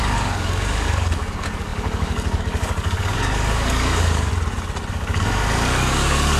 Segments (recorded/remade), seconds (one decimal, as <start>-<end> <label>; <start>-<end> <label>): 0.0-4.3 remade; 4.3-4.9 recorded; 4.9-6.4 remade